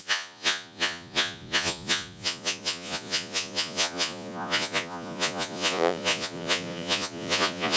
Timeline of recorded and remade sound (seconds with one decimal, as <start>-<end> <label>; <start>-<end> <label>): 0.0-7.8 remade